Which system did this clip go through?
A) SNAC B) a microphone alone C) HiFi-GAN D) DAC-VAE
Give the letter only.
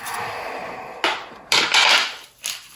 B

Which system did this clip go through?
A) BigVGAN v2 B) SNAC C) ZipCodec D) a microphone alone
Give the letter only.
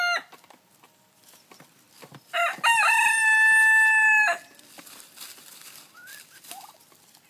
D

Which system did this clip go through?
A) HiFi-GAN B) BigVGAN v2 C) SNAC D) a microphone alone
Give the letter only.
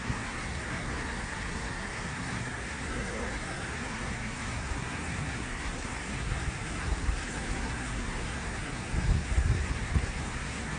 C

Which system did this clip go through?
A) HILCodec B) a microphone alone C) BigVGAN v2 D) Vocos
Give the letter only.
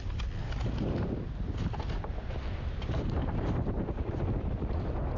B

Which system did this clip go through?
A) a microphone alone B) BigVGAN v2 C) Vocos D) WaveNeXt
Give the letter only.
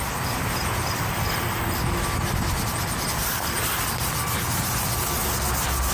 A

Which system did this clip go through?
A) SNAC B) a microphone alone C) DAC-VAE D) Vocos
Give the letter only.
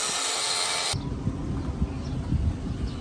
B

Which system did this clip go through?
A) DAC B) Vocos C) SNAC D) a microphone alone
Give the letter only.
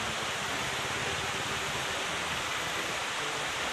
D